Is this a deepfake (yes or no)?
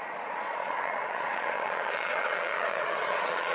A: yes